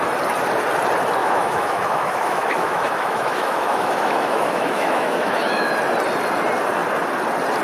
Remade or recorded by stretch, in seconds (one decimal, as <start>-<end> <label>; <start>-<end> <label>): 0.0-1.2 recorded; 1.2-5.7 remade; 5.7-7.6 recorded